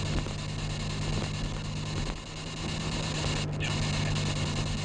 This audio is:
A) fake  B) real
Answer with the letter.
B